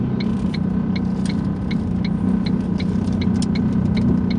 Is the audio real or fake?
real